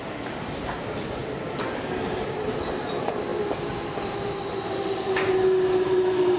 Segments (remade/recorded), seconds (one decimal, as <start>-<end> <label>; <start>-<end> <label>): 0.0-6.4 recorded